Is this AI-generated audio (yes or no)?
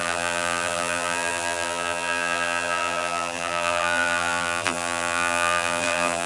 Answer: yes